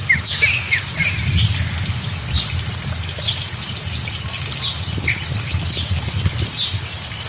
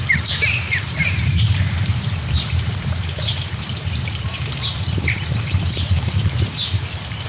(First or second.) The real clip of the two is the first